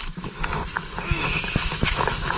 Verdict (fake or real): fake